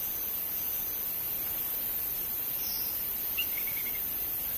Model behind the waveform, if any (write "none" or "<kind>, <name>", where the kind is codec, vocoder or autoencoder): vocoder, BigVGAN v2